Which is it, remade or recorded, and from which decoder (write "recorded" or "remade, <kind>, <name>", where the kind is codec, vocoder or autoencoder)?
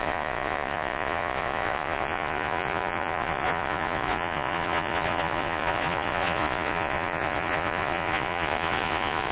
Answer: remade, vocoder, Vocos